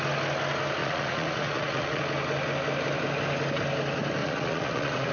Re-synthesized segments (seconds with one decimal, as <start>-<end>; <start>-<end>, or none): 0.8-2.0; 4.2-5.1